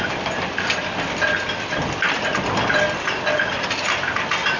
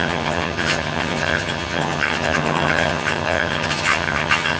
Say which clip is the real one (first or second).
first